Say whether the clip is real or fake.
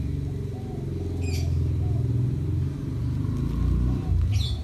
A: real